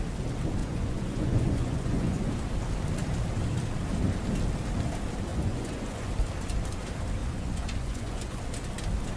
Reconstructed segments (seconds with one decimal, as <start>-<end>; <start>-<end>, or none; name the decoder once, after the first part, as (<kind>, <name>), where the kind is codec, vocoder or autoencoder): 0.6-2.3 (vocoder, Vocos); 5.3-6.1; 7.2-8.4